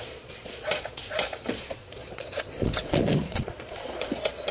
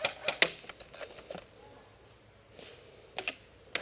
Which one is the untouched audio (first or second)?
second